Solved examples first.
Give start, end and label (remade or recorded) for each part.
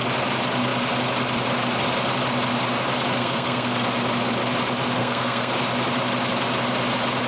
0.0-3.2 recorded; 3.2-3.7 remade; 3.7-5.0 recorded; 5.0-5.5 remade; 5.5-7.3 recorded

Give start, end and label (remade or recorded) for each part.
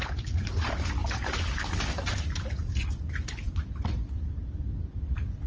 0.0-5.5 recorded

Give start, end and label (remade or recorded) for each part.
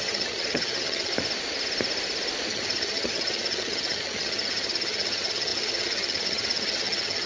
0.0-1.1 remade; 1.1-2.5 recorded; 2.5-7.3 remade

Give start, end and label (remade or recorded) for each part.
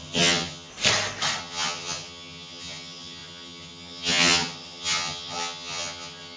0.0-0.7 remade; 0.7-1.4 recorded; 1.4-6.4 remade